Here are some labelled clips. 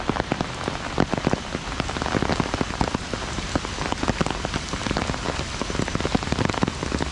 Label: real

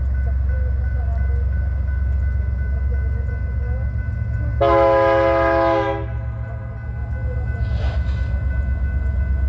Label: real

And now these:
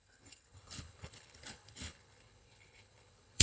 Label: fake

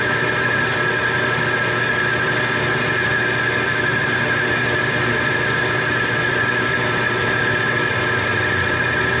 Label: real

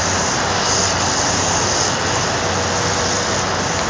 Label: real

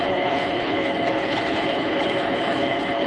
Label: fake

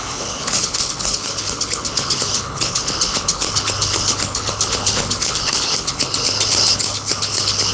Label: fake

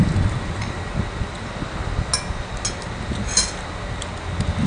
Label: real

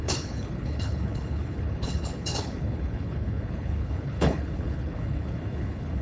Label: fake